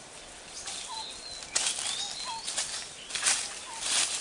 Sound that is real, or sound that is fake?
real